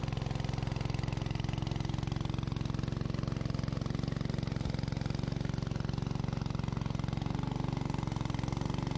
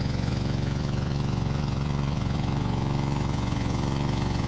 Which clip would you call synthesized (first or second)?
second